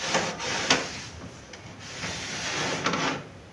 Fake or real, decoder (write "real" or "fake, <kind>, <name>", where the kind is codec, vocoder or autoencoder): real